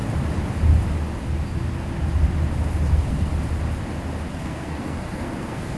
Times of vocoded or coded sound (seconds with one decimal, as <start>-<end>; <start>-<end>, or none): 2.9-3.3; 4.3-5.8